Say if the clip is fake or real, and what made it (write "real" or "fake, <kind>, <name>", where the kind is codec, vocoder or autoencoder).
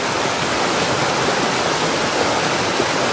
real